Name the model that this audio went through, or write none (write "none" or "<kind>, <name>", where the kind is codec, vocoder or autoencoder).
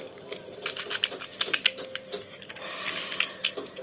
none